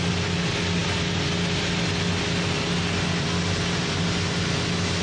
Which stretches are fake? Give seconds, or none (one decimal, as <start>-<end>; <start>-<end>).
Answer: none